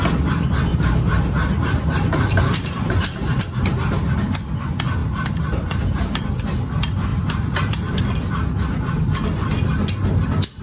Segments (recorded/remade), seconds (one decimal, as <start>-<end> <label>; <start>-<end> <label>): 0.0-0.7 recorded; 0.7-3.5 remade; 3.5-5.0 recorded; 5.0-6.3 remade; 6.3-7.1 recorded; 7.1-8.0 remade; 8.0-10.6 recorded